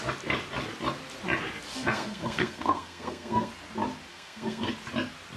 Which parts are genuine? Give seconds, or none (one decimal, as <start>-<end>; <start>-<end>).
0.0-1.7; 3.5-4.1; 4.7-5.4